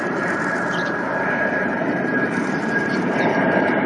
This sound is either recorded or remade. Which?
remade